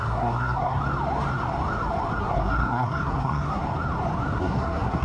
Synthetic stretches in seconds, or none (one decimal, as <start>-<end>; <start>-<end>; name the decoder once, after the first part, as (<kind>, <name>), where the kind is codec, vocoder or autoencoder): 0.0-0.8 (codec, SNAC); 2.2-3.6; 4.4-5.0